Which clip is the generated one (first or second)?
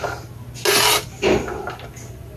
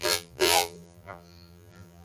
second